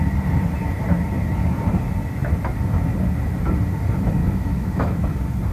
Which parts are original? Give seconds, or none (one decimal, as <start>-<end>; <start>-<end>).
0.0-4.2; 5.0-5.5